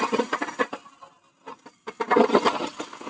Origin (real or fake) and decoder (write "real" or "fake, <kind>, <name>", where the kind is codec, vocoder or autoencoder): real